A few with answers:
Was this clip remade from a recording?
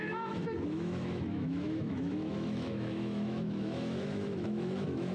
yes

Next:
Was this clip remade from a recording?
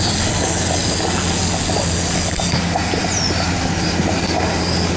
no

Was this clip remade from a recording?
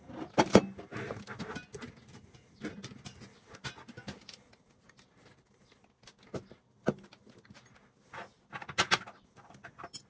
no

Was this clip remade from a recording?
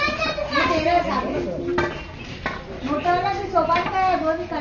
no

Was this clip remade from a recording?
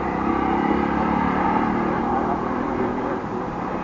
no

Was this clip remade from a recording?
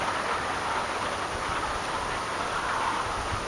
no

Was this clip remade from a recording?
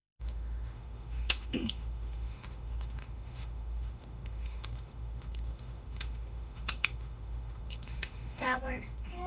yes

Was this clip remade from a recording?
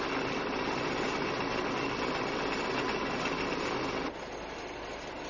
no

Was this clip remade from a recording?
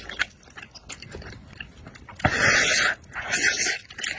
no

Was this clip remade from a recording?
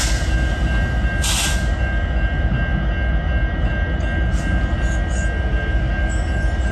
no